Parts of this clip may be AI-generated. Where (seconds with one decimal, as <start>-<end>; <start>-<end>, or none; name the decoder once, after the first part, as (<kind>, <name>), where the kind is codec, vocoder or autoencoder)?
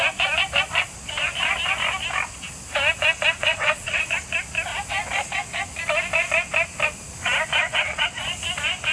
3.4-4.0 (vocoder, WaveNeXt); 7.6-8.2